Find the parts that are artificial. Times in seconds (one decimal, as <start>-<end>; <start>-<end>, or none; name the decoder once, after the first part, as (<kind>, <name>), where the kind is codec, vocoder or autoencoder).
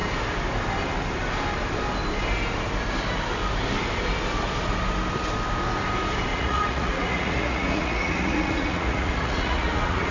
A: 6.3-10.1 (vocoder, Vocos)